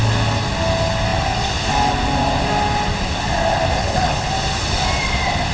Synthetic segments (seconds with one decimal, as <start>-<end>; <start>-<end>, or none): 3.8-4.3